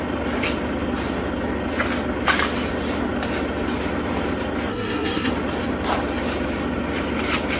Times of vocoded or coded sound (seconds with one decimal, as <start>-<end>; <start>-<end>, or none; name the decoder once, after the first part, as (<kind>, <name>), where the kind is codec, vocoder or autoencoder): 4.7-5.3 (codec, SNAC)